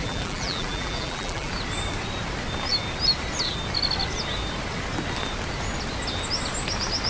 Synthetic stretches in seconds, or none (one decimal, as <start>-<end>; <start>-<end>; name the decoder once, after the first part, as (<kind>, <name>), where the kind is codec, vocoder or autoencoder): 0.0-1.5 (vocoder, BigVGAN v2)